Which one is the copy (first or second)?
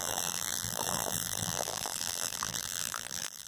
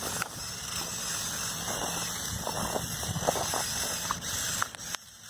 first